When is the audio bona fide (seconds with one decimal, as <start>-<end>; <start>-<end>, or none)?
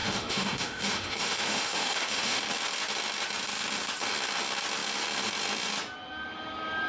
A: 2.4-6.9